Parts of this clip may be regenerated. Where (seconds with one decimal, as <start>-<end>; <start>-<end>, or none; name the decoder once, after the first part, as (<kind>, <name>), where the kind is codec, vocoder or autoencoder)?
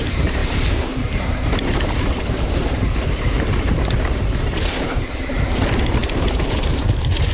0.0-6.0 (vocoder, BigVGAN v2); 6.6-7.3